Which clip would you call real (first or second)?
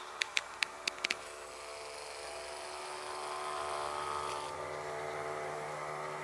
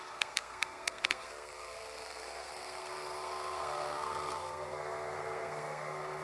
first